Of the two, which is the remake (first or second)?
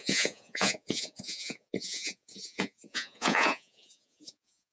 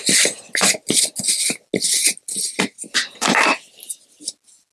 first